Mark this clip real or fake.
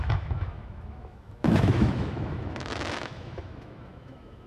fake